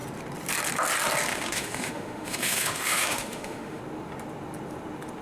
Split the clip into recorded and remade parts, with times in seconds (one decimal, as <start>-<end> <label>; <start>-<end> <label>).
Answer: 0.0-1.3 recorded; 1.3-3.8 remade; 3.8-5.2 recorded